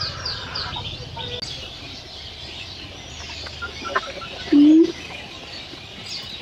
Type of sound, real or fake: real